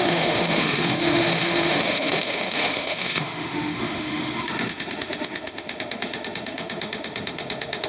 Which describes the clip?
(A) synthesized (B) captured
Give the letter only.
A